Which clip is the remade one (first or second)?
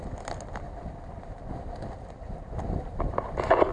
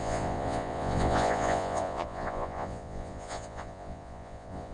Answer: second